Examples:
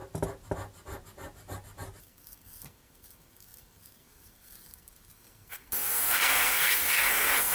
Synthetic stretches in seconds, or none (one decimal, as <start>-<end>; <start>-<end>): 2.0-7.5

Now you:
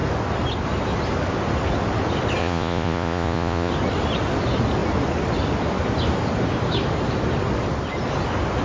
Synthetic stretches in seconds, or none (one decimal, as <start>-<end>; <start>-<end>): 2.4-3.7

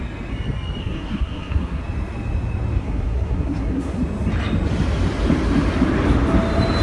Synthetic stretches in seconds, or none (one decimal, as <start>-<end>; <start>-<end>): 0.8-1.8; 2.8-4.0

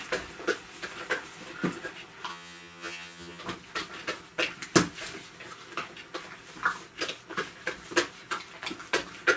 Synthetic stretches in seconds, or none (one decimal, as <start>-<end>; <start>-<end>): 2.3-3.4

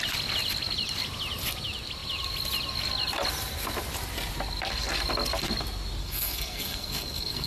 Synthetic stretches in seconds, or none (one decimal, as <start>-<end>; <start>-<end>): 6.0-7.5